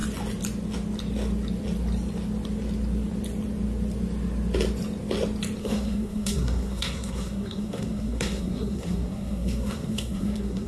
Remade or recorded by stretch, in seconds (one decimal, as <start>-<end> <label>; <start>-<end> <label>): 0.0-5.6 recorded; 5.6-10.7 remade